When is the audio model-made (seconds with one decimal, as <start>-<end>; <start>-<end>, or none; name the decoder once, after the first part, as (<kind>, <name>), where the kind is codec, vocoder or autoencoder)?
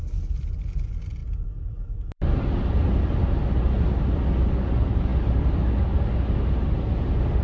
none